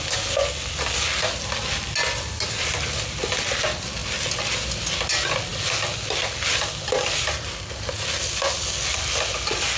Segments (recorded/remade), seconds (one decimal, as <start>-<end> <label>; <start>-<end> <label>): 0.0-9.8 recorded